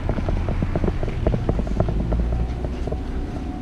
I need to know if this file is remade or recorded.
recorded